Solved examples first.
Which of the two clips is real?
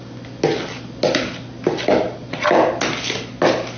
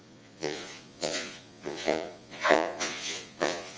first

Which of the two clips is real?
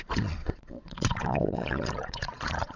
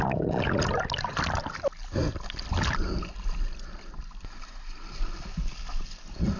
second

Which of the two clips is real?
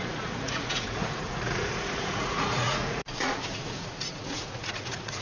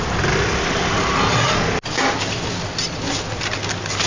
second